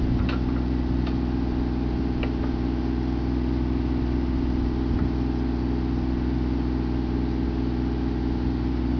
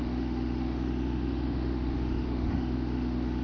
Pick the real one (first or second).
first